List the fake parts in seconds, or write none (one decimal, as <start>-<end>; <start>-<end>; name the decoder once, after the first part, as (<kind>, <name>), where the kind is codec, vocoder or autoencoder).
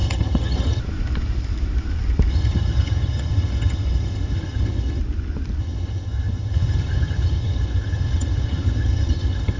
0.0-0.8 (vocoder, HiFi-GAN); 2.3-5.0; 5.6-9.6